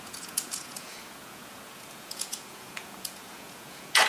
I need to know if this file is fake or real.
fake